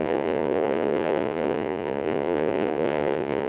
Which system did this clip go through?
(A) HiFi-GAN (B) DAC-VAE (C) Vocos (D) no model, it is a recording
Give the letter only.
C